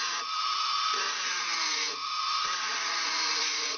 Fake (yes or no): yes